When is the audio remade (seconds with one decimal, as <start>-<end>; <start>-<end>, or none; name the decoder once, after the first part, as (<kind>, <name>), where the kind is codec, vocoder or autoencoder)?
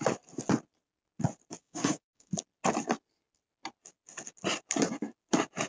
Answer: 1.6-2.3 (codec, DAC)